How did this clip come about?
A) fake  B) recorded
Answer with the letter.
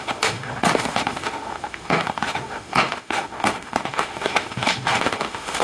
A